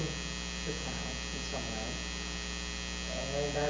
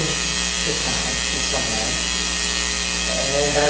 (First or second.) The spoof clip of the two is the second